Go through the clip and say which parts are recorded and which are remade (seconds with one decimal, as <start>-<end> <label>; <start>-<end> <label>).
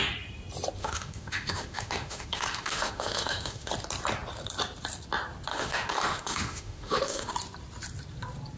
0.0-0.8 recorded; 0.8-3.7 remade; 3.7-5.5 recorded; 5.5-7.3 remade; 7.3-8.6 recorded